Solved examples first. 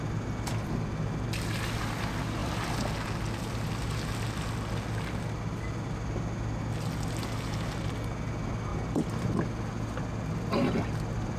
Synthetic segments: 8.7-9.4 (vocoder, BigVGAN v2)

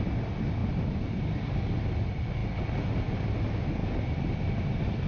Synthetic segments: 3.8-4.4 (vocoder, BigVGAN v2)

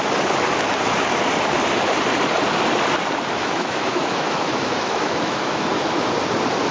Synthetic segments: 3.4-6.1 (autoencoder, DAC-VAE)

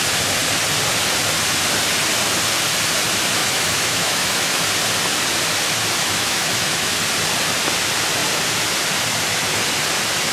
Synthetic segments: 3.4-4.6 (autoencoder, DAC-VAE); 6.0-7.0

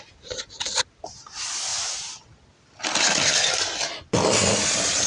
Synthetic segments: none